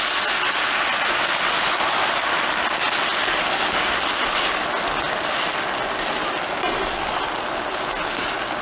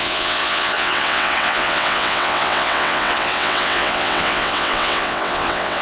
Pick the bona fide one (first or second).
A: first